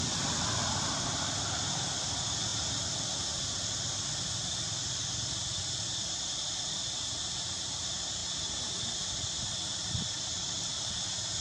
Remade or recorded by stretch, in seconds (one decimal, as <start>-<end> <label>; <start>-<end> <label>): 0.0-8.2 remade; 8.2-9.1 recorded; 9.1-11.4 remade